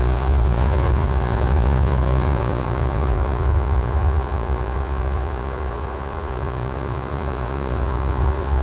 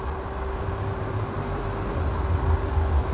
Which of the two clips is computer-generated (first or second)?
first